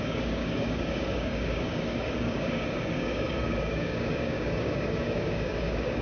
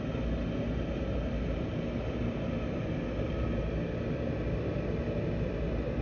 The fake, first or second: first